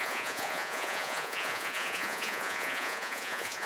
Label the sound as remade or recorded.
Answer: remade